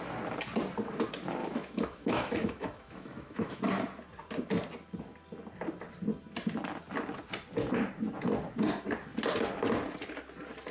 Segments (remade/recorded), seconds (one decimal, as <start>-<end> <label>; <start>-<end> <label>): 0.0-1.4 recorded; 1.4-3.6 remade; 3.6-10.7 recorded